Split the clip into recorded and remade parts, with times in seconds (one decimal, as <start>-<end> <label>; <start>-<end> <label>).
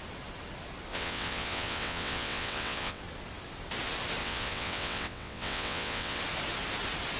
0.0-0.9 recorded; 0.9-3.0 remade; 3.0-4.2 recorded; 4.2-6.2 remade; 6.2-7.2 recorded